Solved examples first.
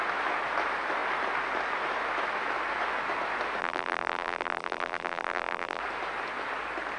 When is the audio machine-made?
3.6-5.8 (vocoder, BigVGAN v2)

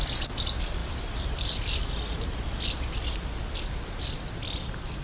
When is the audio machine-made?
0.8-2.6 (vocoder, BigVGAN v2)

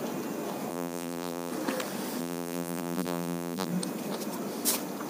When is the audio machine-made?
0.7-1.5 (vocoder, BigVGAN v2); 2.2-3.7